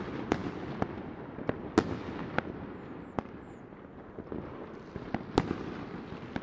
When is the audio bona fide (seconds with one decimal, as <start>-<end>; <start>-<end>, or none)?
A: 0.0-6.4